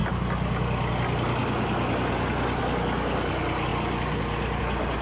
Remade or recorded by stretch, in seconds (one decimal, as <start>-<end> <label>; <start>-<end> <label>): 0.0-5.0 recorded